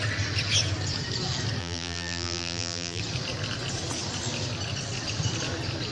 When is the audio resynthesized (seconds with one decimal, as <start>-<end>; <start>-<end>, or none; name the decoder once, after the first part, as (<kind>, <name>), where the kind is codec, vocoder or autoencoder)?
1.6-3.0 (vocoder, BigVGAN v2)